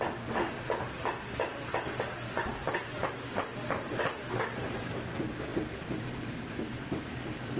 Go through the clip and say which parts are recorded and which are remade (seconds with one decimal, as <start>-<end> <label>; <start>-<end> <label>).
0.0-7.6 recorded